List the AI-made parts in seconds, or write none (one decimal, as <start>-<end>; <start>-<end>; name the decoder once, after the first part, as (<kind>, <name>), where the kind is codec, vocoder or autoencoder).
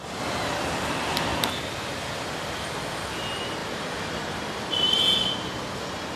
3.6-4.7 (vocoder, BigVGAN v2)